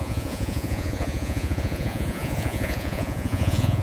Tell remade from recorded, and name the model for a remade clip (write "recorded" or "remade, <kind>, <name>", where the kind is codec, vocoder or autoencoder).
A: remade, vocoder, Vocos